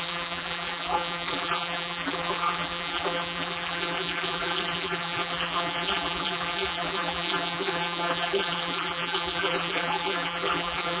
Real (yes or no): no